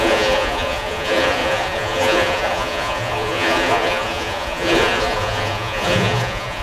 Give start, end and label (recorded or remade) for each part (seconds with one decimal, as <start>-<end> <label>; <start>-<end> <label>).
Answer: 0.0-6.6 remade

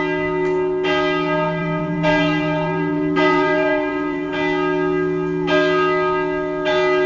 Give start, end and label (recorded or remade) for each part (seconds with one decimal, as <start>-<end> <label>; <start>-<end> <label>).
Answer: 0.0-1.6 recorded; 1.6-4.3 remade; 4.3-7.1 recorded

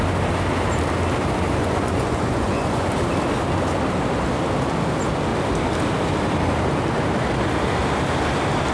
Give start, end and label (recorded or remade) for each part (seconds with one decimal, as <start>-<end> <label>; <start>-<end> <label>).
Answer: 0.0-1.6 recorded; 1.6-2.9 remade; 2.9-8.7 recorded

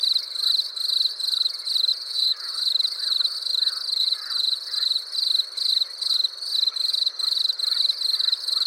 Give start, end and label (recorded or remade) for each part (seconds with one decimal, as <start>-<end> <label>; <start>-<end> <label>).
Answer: 0.0-1.9 recorded; 1.9-2.5 remade; 2.5-4.0 recorded; 4.0-5.0 remade; 5.0-8.7 recorded